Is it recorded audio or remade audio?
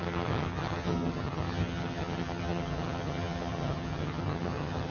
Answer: remade